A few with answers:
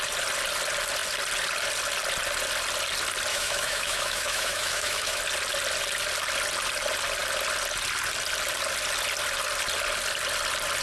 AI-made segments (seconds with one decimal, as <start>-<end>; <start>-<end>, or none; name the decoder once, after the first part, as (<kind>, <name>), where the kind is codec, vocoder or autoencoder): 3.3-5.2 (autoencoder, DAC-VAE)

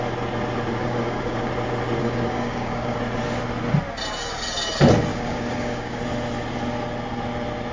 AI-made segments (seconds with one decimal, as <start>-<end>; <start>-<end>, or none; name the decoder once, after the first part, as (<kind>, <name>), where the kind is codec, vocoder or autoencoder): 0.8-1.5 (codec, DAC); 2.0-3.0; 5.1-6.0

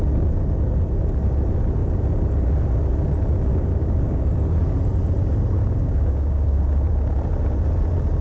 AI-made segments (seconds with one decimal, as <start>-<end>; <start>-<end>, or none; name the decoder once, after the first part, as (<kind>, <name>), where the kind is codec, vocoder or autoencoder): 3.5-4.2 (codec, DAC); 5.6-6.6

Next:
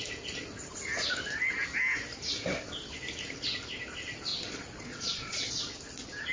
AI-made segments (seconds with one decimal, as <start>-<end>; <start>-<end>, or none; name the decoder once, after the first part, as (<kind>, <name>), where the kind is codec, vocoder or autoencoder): 4.3-5.5 (vocoder, Vocos)

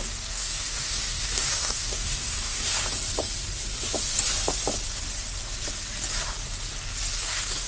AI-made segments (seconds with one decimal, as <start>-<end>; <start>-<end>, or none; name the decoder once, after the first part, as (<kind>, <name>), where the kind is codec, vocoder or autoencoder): 0.0-2.8 (codec, DAC); 7.2-7.7